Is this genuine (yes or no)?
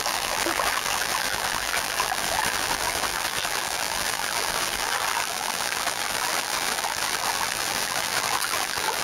no